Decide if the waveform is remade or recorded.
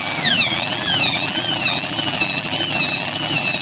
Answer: remade